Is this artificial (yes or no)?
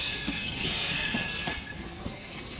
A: yes